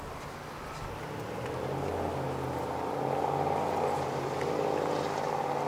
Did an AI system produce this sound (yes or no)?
no